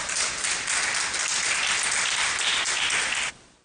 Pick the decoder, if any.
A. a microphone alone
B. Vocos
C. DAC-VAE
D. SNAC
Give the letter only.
A